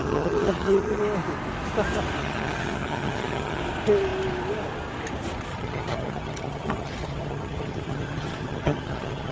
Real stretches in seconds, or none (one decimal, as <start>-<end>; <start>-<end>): 1.0-2.2; 3.6-5.5